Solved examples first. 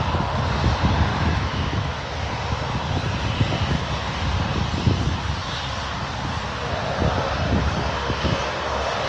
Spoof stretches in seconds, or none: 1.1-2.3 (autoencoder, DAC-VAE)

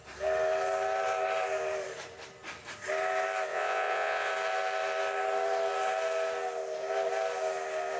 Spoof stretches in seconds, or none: 3.5-4.3 (vocoder, Vocos)

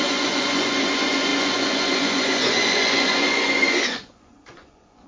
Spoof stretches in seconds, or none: 0.0-5.1 (vocoder, Vocos)

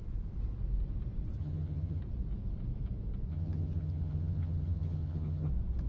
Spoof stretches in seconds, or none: 1.4-2.0 (vocoder, HiFi-GAN); 3.3-5.5

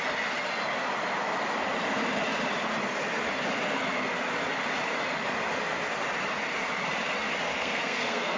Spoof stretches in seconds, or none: 7.5-8.4 (codec, SNAC)

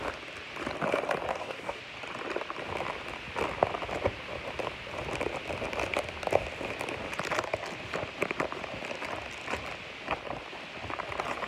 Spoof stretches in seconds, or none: 1.3-1.8 (codec, DAC)